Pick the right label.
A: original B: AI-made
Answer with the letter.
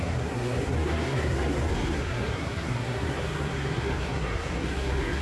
B